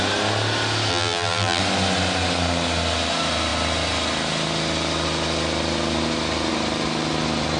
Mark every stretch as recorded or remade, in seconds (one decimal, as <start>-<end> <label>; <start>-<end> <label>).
0.0-0.9 recorded; 0.9-1.6 remade; 1.6-7.6 recorded